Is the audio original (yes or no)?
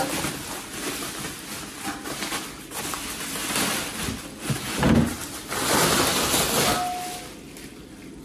yes